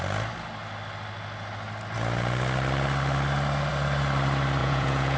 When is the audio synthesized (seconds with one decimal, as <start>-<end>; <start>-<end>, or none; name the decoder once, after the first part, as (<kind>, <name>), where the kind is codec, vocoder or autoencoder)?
4.6-5.2 (vocoder, Vocos)